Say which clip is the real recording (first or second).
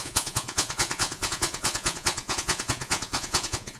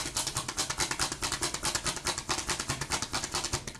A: second